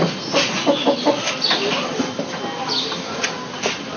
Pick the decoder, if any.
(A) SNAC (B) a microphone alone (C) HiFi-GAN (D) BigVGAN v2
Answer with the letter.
B